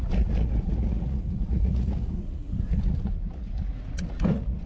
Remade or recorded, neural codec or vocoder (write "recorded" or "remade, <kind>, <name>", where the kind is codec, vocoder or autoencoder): remade, vocoder, Vocos